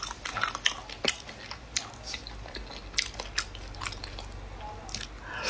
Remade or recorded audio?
recorded